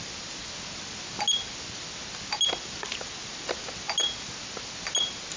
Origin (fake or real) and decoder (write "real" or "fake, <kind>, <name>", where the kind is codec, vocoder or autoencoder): real